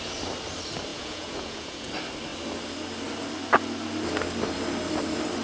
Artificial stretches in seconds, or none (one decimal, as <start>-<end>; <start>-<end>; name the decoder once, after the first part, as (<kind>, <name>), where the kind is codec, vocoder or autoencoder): 0.9-1.9 (vocoder, Vocos)